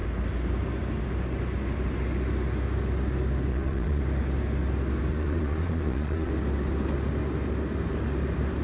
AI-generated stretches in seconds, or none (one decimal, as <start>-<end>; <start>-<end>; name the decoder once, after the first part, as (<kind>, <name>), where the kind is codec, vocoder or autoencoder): 3.5-4.0 (vocoder, Vocos); 5.1-6.3